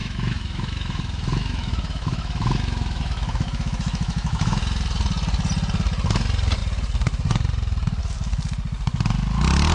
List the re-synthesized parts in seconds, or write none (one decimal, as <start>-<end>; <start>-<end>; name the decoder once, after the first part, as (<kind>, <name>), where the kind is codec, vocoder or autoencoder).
0.0-4.6 (autoencoder, DAC-VAE)